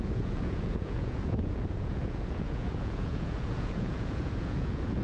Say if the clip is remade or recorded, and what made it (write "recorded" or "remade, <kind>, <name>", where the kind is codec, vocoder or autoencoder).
remade, vocoder, Vocos